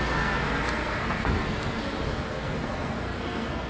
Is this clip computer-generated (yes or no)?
yes